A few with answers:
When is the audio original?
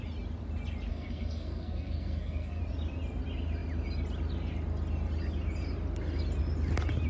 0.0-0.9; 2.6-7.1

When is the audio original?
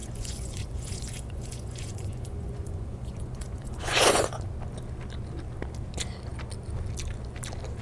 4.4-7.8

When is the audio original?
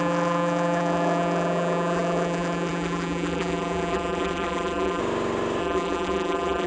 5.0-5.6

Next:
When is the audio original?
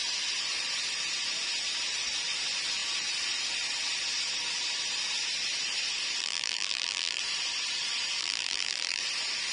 0.0-6.2; 7.2-8.2; 9.0-9.5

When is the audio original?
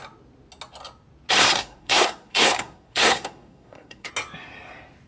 0.0-1.4; 4.1-5.1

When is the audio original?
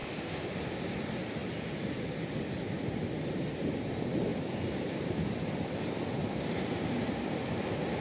0.0-8.0